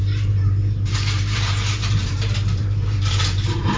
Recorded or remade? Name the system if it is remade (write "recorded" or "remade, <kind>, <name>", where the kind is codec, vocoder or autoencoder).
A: remade, vocoder, BigVGAN v2